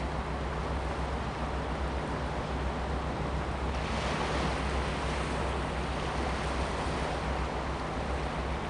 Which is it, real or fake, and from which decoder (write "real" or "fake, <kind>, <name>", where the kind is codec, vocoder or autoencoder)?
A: real